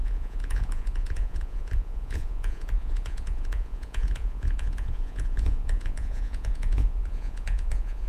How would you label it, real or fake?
fake